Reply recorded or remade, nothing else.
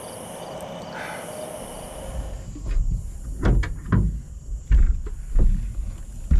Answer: recorded